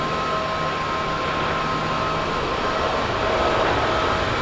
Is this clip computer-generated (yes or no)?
no